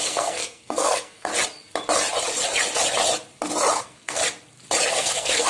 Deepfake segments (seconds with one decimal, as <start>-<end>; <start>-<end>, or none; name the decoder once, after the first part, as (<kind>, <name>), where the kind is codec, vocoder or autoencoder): 0.0-1.3 (codec, SNAC); 3.8-4.2; 4.9-5.5